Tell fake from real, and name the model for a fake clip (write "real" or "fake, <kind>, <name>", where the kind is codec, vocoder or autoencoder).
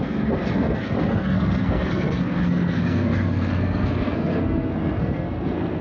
fake, codec, SNAC